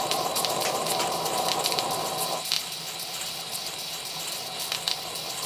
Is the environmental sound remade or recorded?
recorded